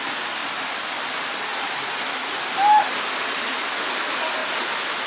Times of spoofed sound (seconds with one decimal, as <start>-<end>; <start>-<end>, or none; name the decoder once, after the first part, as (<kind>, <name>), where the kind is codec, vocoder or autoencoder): none